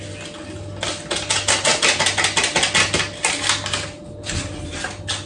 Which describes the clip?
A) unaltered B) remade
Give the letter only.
A